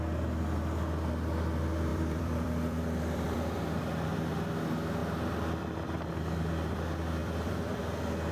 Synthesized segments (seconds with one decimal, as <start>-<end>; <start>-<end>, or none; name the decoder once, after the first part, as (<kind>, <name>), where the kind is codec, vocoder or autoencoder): 1.9-3.8 (vocoder, BigVGAN v2); 5.0-6.1; 7.2-7.8